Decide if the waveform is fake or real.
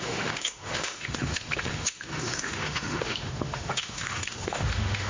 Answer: fake